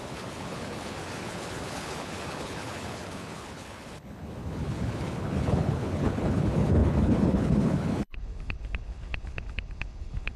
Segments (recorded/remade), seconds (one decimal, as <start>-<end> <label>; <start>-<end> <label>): 0.0-10.4 remade